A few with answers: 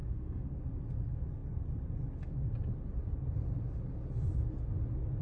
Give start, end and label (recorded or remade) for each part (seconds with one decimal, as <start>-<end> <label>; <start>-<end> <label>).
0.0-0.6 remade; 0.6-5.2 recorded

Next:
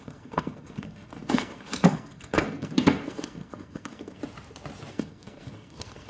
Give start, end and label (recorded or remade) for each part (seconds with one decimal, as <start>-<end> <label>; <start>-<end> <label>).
0.0-4.2 remade; 4.2-4.9 recorded; 4.9-6.1 remade

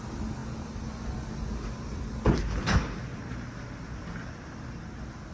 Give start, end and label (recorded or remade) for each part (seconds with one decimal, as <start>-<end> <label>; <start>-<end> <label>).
0.0-5.3 recorded